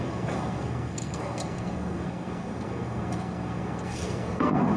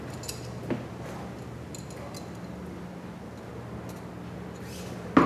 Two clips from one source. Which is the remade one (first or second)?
first